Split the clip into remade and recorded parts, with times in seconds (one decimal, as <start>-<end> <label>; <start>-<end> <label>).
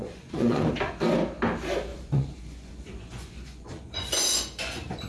0.0-0.7 remade; 0.7-1.9 recorded; 1.9-5.1 remade